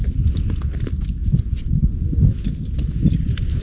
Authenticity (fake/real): real